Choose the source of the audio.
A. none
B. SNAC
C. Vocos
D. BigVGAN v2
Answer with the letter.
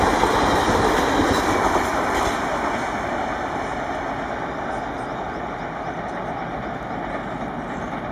A